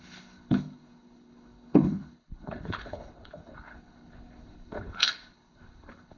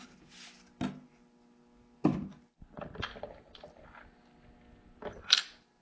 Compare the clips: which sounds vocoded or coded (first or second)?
first